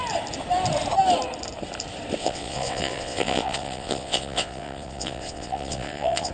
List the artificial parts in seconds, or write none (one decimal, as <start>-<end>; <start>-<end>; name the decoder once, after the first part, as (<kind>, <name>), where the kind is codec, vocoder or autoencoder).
2.2-6.3 (vocoder, WaveNeXt)